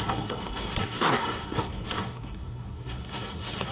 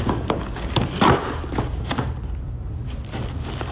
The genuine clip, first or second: second